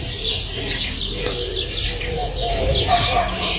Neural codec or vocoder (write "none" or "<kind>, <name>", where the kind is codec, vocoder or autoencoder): none